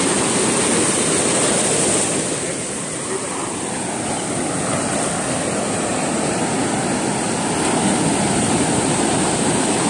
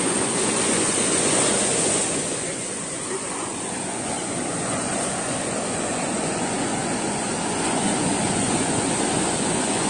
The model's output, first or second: second